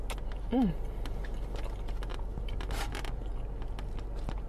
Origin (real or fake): real